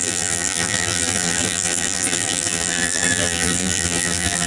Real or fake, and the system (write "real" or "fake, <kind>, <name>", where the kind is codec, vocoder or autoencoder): fake, vocoder, BigVGAN v2